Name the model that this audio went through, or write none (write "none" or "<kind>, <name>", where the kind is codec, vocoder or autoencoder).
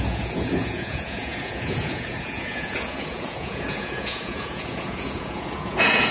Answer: vocoder, Vocos